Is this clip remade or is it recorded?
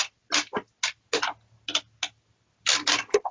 recorded